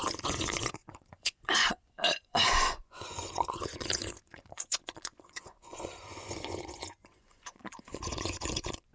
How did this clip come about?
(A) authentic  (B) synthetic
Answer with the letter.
B